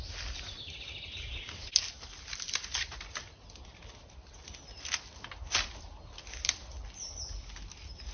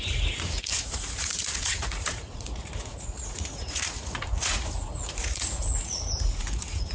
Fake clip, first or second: second